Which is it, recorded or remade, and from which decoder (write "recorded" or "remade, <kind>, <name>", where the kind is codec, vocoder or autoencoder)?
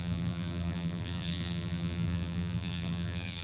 remade, vocoder, BigVGAN v2